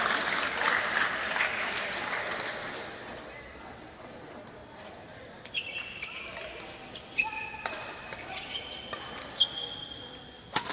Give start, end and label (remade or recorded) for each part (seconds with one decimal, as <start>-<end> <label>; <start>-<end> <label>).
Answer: 0.0-1.5 recorded; 1.5-3.6 remade; 3.6-4.6 recorded; 4.6-8.2 remade; 8.2-10.7 recorded